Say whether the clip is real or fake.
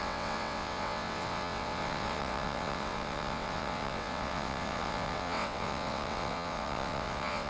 fake